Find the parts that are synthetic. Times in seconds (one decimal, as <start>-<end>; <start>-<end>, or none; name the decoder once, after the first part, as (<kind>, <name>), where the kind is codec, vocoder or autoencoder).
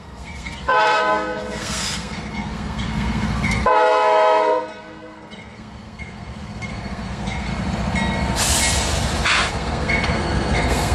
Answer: 0.0-7.5 (codec, SNAC); 9.5-10.9